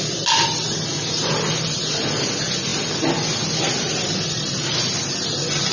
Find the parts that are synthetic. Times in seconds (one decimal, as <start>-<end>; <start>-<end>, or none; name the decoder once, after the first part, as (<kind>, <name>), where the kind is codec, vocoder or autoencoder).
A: none